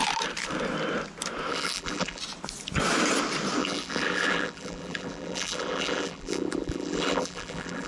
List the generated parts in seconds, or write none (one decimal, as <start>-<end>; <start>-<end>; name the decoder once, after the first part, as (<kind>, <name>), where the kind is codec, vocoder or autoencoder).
1.5-2.2 (vocoder, BigVGAN v2); 3.6-7.9